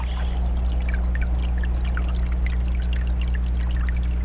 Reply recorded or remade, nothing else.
recorded